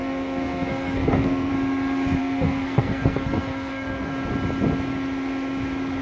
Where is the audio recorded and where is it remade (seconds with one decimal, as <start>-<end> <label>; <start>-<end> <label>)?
0.0-1.5 remade; 1.5-2.2 recorded; 2.2-4.1 remade; 4.1-6.0 recorded